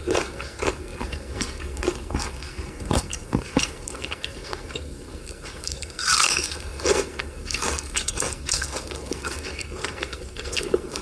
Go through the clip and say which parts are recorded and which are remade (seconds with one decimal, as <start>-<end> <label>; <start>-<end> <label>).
0.0-11.0 remade